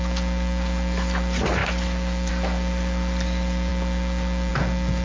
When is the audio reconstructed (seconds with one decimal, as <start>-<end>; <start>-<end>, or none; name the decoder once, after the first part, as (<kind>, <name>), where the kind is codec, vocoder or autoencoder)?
none